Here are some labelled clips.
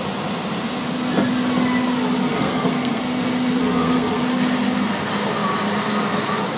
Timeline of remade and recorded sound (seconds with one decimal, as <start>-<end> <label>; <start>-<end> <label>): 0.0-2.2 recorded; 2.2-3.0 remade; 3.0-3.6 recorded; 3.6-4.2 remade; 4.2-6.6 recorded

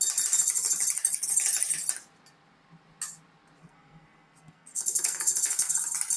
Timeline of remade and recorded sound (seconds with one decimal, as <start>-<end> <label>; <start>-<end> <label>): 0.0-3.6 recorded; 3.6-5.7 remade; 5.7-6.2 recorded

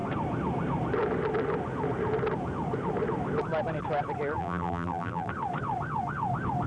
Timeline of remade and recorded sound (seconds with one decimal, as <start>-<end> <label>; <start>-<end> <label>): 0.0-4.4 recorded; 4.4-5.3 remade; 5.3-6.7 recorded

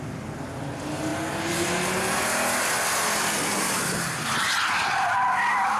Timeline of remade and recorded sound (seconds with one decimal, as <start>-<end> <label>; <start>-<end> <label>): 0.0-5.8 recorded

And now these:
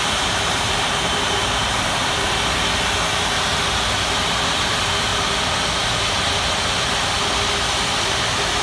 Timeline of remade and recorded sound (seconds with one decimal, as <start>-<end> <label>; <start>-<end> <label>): 0.0-1.6 remade; 1.6-4.6 recorded; 4.6-5.1 remade; 5.1-8.0 recorded; 8.0-8.6 remade

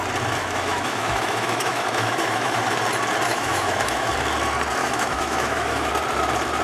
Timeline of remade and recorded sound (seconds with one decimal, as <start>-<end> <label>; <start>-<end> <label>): 0.0-0.4 recorded; 0.4-2.6 remade; 2.6-3.3 recorded; 3.3-4.1 remade; 4.1-4.8 recorded; 4.8-5.9 remade; 5.9-6.6 recorded

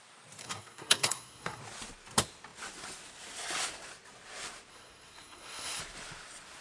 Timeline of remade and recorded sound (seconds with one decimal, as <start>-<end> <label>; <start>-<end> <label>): 0.0-0.4 recorded; 0.4-1.6 remade; 1.6-4.7 recorded; 4.7-5.8 remade; 5.8-6.6 recorded

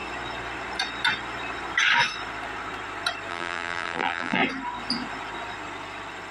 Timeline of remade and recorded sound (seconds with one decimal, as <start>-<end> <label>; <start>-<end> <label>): 0.0-3.3 recorded; 3.3-4.4 remade; 4.4-6.3 recorded